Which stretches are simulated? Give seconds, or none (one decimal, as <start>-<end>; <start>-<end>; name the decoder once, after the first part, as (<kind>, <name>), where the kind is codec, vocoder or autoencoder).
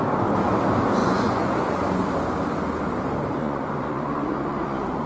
1.0-1.8 (vocoder, Vocos); 3.4-5.1